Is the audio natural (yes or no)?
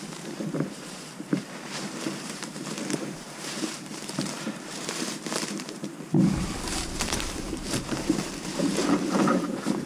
no